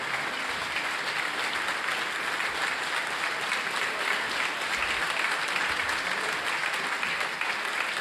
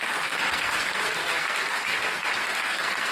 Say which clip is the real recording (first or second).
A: first